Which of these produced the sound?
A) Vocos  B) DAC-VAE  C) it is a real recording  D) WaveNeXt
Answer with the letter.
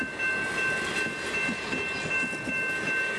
C